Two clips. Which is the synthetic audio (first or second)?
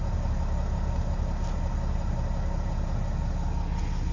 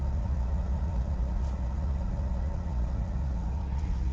second